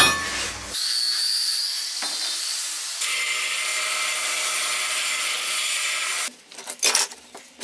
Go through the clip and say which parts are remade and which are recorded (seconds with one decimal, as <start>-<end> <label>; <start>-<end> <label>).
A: 0.0-7.6 recorded